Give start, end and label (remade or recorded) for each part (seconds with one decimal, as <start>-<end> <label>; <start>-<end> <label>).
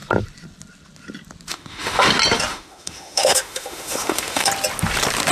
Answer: 0.0-1.5 recorded; 1.5-2.1 remade; 2.1-2.5 recorded; 2.5-4.5 remade; 4.5-5.3 recorded